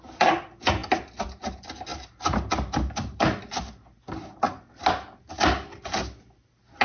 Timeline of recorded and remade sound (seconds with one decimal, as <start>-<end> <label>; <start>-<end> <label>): 0.0-6.8 recorded